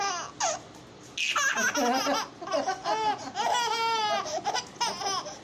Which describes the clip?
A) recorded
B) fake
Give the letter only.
A